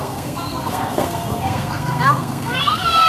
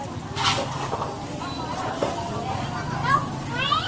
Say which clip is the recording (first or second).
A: second